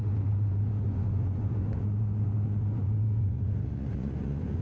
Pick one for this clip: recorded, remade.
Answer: remade